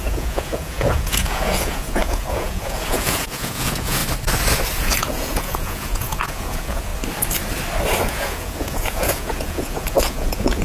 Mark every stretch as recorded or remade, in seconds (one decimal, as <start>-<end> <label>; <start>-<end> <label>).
0.0-4.0 remade; 4.0-4.8 recorded; 4.8-6.9 remade; 6.9-8.1 recorded; 8.1-10.6 remade